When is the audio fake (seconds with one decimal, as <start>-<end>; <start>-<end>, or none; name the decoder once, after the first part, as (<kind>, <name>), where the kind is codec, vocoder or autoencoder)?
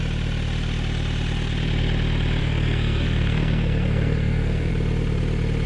2.4-4.7 (codec, SNAC)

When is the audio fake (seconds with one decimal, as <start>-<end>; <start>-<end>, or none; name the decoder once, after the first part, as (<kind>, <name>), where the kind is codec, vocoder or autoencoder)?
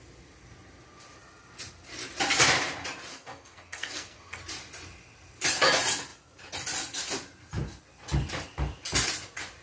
3.1-4.4 (codec, SNAC)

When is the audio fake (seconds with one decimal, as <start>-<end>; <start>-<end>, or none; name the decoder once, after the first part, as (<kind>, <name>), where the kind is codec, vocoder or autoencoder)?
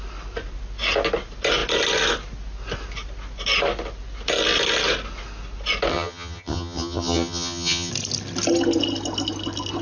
5.9-7.9 (vocoder, HiFi-GAN)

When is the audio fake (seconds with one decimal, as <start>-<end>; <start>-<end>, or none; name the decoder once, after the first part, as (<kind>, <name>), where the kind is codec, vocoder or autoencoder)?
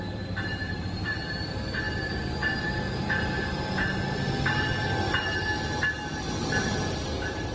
0.0-1.2 (vocoder, BigVGAN v2); 2.6-3.0; 6.4-7.5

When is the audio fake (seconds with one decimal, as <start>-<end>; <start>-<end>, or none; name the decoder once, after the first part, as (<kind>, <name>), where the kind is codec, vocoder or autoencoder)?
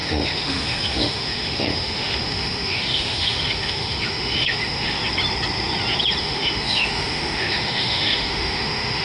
0.0-5.0 (autoencoder, DAC-VAE); 6.2-9.0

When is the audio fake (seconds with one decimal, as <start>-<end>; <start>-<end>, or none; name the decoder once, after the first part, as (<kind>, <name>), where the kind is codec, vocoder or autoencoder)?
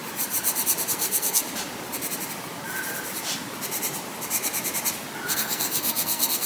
0.9-1.4 (codec, SNAC); 5.3-6.5